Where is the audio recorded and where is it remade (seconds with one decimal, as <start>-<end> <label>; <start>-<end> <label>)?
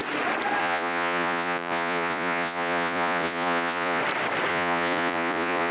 0.0-0.6 recorded; 0.6-4.0 remade; 4.0-4.5 recorded; 4.5-5.7 remade